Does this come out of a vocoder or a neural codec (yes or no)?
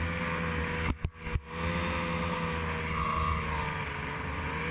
no